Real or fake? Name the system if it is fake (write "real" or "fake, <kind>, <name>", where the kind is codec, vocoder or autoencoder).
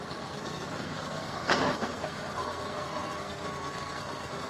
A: fake, codec, SNAC